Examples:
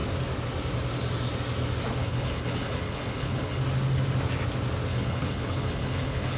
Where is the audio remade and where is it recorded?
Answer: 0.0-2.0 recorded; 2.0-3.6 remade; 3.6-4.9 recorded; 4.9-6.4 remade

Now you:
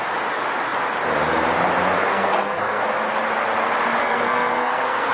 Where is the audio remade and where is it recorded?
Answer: 0.0-2.1 recorded; 2.1-2.8 remade; 2.8-4.0 recorded; 4.0-5.1 remade

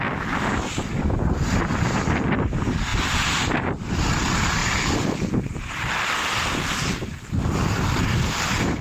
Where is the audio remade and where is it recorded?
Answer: 0.0-2.9 recorded; 2.9-4.1 remade; 4.1-8.8 recorded

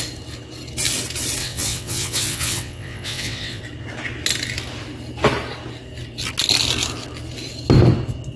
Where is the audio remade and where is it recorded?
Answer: 0.0-1.4 recorded; 1.4-3.6 remade; 3.6-8.4 recorded

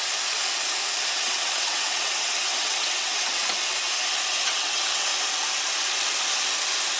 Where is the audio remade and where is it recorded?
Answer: 0.0-1.1 recorded; 1.1-3.4 remade; 3.4-4.4 recorded; 4.4-5.1 remade; 5.1-7.0 recorded